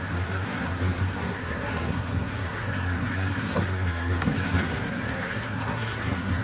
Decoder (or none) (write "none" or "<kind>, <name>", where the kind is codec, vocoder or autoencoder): codec, SNAC